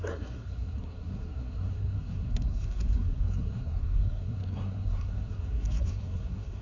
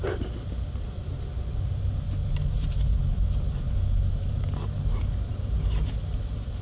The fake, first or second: first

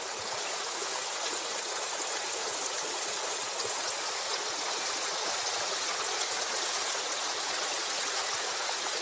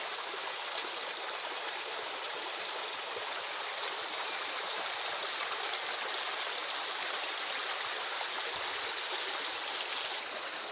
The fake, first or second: first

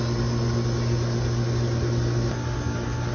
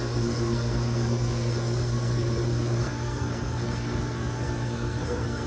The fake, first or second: second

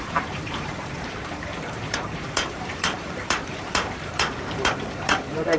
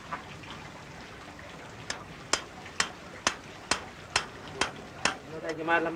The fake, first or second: first